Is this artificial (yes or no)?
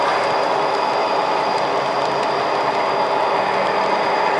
no